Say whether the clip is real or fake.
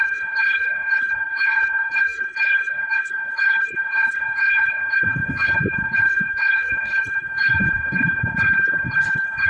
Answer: fake